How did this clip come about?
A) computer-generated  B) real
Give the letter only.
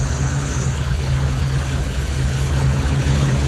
A